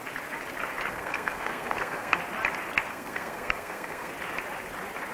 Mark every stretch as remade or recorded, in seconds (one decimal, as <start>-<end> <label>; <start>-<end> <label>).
0.0-0.9 recorded; 0.9-2.2 remade; 2.2-2.9 recorded; 2.9-4.1 remade; 4.1-5.1 recorded